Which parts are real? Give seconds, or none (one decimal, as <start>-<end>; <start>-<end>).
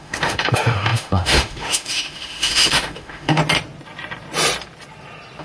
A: 3.4-5.4